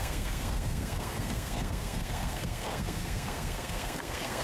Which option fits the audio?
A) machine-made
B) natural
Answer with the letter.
A